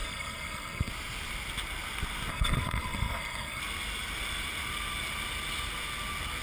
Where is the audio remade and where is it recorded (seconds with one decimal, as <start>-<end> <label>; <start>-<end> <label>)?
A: 0.0-0.9 remade; 0.9-2.3 recorded; 2.3-3.6 remade; 3.6-6.4 recorded